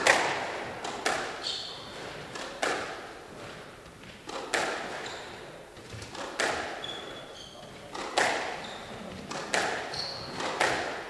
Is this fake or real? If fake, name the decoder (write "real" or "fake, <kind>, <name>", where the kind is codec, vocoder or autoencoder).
real